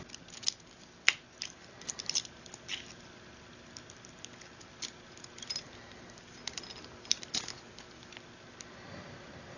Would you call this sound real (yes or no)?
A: yes